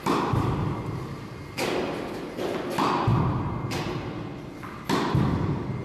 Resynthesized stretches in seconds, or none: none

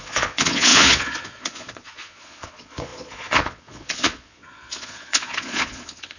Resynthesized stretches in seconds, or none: 0.0-6.2